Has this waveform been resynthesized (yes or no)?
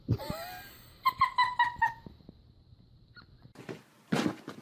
no